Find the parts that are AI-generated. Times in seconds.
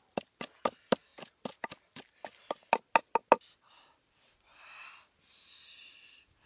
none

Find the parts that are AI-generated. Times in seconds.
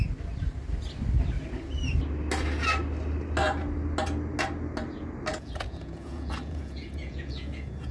5.3-7.9 (vocoder, Vocos)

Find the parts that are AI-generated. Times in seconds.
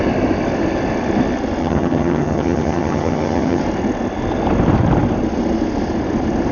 1.6-3.6 (vocoder, HiFi-GAN)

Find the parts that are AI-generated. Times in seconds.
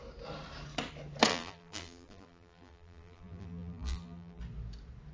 1.3-4.4 (vocoder, BigVGAN v2)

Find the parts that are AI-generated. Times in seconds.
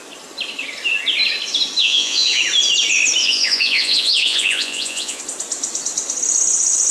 1.8-2.4 (vocoder, Vocos); 3.2-5.2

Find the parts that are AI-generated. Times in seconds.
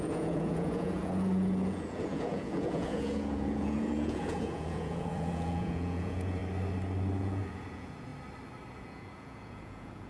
0.0-6.4 (vocoder, Vocos); 7.2-8.1; 8.7-10.1